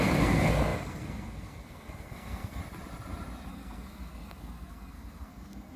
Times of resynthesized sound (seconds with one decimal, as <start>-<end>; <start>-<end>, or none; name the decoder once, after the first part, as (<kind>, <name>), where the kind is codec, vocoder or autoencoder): 0.0-2.6 (codec, SNAC); 3.5-5.8